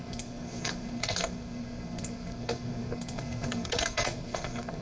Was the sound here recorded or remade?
remade